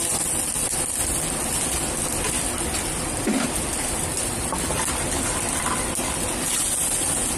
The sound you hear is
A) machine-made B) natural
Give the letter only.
B